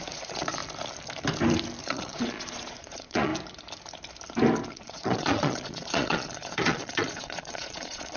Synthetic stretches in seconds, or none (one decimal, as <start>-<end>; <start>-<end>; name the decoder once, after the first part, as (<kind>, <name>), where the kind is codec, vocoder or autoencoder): 0.0-0.6 (vocoder, Vocos); 1.8-3.3; 4.7-8.2